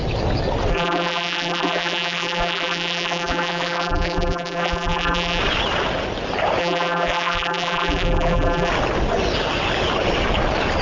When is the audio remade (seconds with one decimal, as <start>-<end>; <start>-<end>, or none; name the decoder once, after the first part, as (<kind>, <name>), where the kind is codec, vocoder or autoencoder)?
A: 0.7-5.4 (vocoder, BigVGAN v2); 6.6-8.7